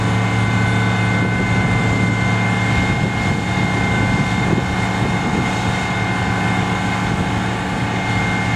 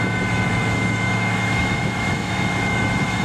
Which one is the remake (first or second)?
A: second